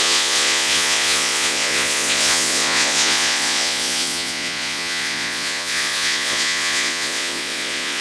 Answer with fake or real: fake